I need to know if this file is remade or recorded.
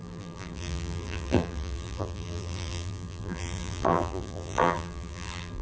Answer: remade